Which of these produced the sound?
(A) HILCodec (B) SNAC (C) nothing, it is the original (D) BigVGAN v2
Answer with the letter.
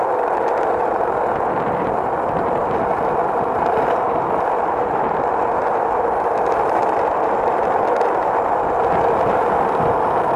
D